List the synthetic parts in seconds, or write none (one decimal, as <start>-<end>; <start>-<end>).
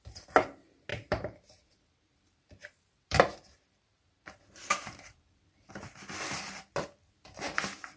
0.9-5.7